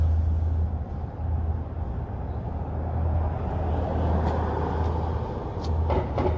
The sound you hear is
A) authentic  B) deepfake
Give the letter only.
A